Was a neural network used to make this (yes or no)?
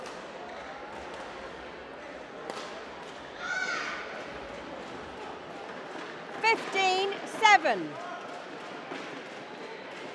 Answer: no